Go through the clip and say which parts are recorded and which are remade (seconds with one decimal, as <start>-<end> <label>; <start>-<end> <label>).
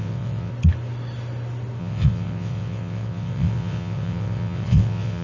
0.0-0.5 remade; 0.5-1.8 recorded; 1.8-5.2 remade